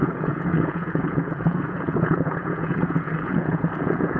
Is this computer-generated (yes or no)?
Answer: yes